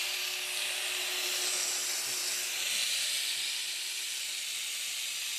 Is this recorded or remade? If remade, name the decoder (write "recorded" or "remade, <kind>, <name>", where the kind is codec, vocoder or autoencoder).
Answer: recorded